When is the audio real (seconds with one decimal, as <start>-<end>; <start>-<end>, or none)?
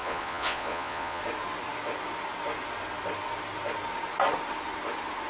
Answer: 1.2-5.3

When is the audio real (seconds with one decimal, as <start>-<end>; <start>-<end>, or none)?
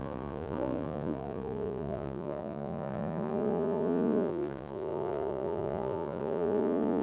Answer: none